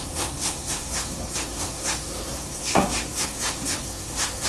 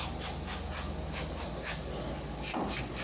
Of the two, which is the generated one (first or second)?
first